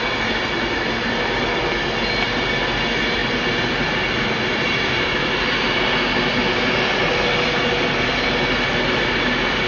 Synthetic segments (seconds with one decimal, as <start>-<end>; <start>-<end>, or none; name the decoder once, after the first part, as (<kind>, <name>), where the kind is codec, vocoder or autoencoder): none